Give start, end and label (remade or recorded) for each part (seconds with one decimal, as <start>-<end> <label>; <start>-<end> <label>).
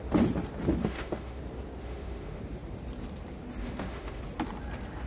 0.0-0.8 recorded; 0.8-1.4 remade; 1.4-1.8 recorded; 1.8-2.4 remade; 2.4-3.6 recorded; 3.6-4.2 remade; 4.2-5.1 recorded